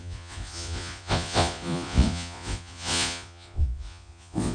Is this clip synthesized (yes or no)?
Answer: yes